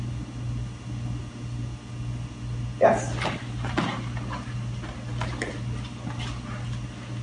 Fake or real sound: real